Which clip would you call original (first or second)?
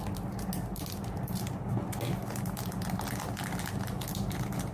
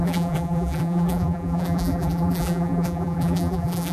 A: first